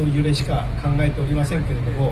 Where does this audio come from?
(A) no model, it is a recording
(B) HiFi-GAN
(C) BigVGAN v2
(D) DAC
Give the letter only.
A